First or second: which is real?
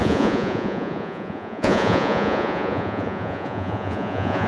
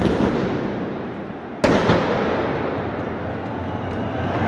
second